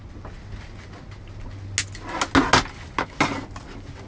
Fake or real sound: real